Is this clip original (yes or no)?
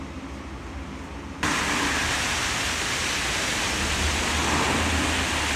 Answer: yes